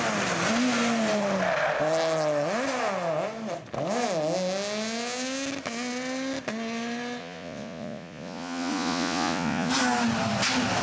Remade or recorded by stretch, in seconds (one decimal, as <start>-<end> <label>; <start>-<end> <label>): 0.0-7.2 recorded; 7.2-9.7 remade; 9.7-10.8 recorded